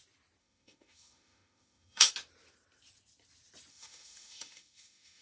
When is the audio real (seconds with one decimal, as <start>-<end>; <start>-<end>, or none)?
0.0-0.4; 2.1-3.7